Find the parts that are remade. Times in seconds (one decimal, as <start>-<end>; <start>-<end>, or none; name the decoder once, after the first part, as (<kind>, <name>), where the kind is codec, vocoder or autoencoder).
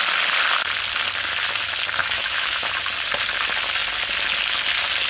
2.0-2.7 (autoencoder, DAC-VAE)